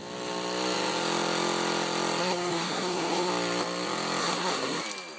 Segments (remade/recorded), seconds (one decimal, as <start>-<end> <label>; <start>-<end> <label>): 0.0-2.2 recorded; 2.2-3.3 remade; 3.3-4.2 recorded; 4.2-4.8 remade; 4.8-5.2 recorded

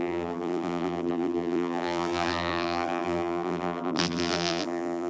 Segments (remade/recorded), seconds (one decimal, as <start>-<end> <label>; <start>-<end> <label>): 0.0-5.1 remade

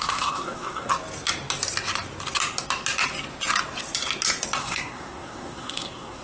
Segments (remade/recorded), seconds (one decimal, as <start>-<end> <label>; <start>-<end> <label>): 0.0-0.9 remade; 0.9-4.6 recorded; 4.6-6.2 remade

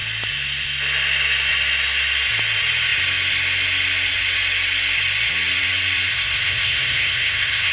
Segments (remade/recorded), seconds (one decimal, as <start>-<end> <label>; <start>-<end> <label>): 0.0-6.1 recorded; 6.1-7.7 remade